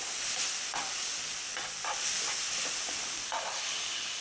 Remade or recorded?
recorded